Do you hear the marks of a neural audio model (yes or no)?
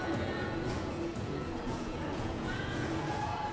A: yes